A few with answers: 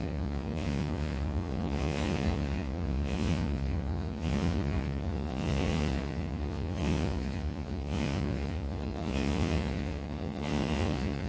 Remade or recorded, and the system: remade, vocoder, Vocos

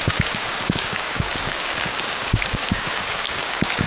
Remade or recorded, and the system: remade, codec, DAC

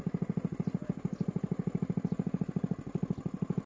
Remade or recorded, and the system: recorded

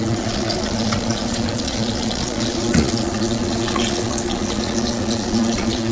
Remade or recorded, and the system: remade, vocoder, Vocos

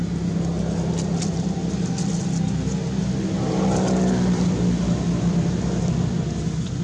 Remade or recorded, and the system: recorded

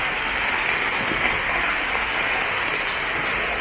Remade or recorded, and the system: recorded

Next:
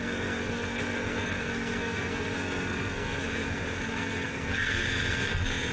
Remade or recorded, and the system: remade, codec, SNAC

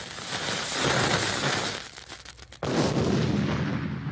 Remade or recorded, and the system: recorded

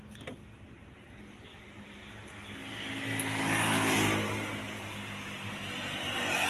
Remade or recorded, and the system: recorded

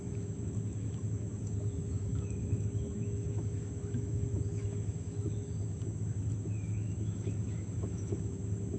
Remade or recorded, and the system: remade, autoencoder, DAC-VAE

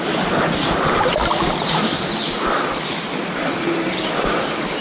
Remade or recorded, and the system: recorded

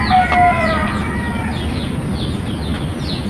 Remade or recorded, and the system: recorded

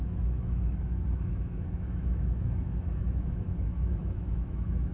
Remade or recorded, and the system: remade, autoencoder, DAC-VAE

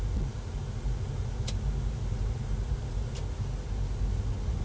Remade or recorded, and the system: recorded